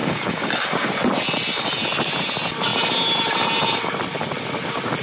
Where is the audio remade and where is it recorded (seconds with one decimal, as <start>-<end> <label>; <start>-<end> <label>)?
0.0-0.5 remade; 0.5-5.0 recorded